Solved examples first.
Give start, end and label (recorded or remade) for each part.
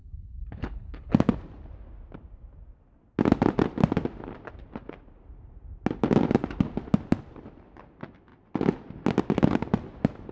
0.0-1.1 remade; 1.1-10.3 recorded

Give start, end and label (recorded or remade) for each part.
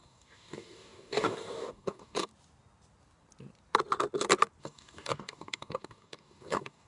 0.0-2.3 remade; 2.3-4.6 recorded; 4.6-6.9 remade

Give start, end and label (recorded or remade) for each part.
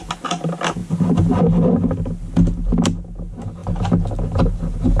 0.0-5.0 recorded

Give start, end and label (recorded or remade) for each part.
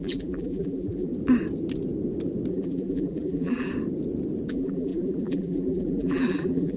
0.0-1.1 remade; 1.1-2.5 recorded; 2.5-3.7 remade; 3.7-4.5 recorded; 4.5-6.8 remade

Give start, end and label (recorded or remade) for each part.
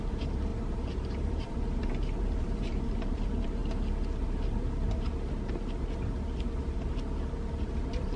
0.0-3.6 remade; 3.6-7.7 recorded; 7.7-8.2 remade